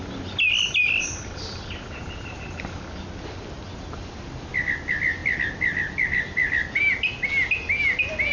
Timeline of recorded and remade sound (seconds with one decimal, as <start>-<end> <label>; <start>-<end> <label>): 0.0-8.3 recorded